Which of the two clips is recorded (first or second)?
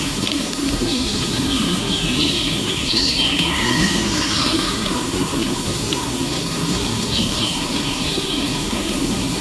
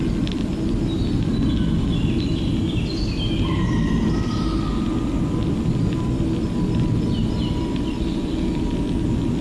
second